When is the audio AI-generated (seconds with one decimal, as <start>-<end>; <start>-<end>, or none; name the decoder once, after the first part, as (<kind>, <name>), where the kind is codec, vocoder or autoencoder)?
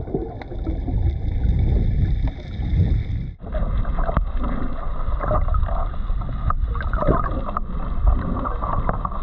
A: none